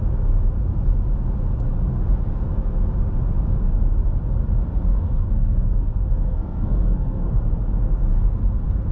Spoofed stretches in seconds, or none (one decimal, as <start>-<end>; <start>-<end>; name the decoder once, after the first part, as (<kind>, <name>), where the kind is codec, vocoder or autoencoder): 4.9-7.3 (codec, SNAC)